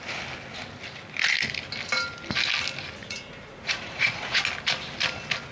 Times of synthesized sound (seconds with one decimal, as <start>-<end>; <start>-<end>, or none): 3.0-4.4